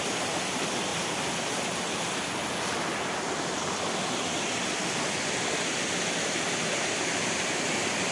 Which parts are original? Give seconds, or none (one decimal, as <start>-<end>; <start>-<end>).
0.9-5.8